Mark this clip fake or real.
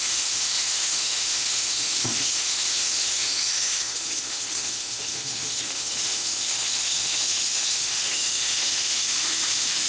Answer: fake